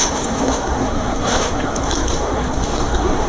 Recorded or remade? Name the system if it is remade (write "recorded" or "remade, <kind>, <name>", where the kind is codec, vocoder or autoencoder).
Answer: remade, codec, SNAC